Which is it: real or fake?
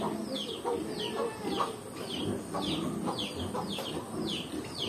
real